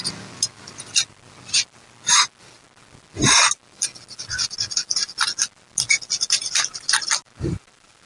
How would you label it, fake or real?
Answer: real